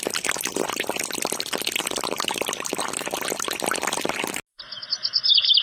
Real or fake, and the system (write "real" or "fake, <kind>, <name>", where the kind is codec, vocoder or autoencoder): real